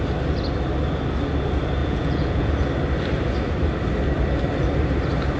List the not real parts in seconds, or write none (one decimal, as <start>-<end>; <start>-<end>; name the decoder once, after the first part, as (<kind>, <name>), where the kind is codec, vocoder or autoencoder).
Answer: 1.8-2.5 (vocoder, Vocos)